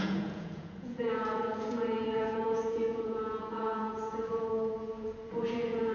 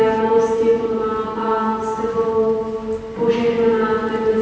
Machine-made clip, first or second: first